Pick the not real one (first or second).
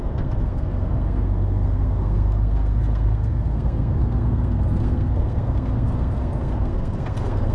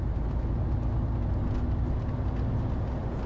first